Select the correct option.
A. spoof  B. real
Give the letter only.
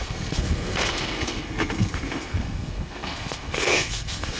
A